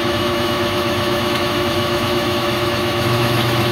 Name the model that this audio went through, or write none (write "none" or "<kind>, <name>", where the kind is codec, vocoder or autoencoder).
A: autoencoder, DAC-VAE